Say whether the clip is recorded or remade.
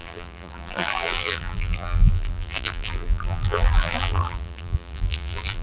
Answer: remade